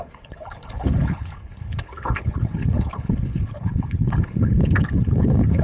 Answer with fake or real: fake